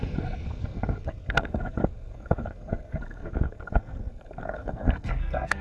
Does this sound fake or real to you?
fake